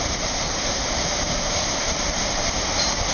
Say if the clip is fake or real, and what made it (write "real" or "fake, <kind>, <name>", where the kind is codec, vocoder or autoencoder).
fake, vocoder, BigVGAN v2